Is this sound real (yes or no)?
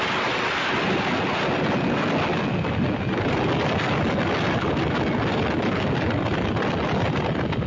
yes